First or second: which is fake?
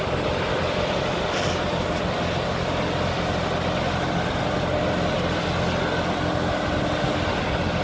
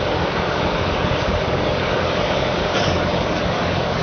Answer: second